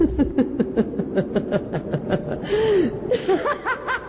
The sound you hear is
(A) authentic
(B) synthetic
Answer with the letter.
A